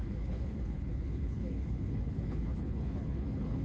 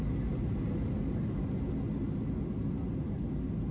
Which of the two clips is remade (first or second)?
first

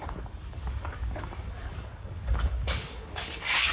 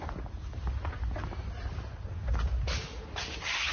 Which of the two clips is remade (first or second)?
first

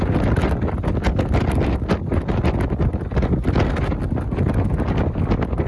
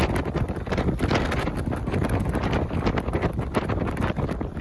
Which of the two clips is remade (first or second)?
second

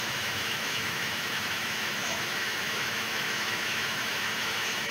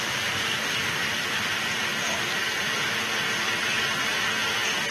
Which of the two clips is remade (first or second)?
first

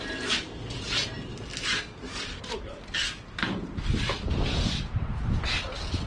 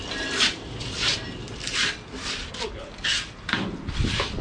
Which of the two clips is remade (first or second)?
second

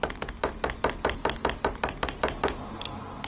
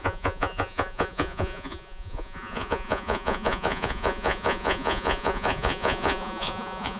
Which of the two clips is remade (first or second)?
second